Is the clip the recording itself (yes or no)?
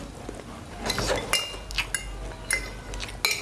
yes